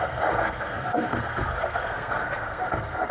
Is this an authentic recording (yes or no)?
no